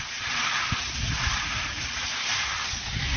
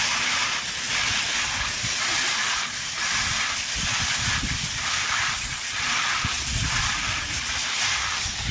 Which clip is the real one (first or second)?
first